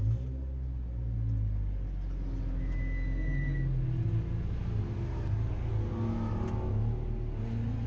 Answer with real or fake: real